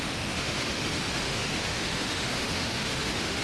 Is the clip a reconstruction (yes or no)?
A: yes